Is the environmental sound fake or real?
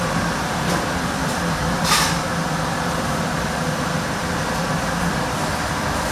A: fake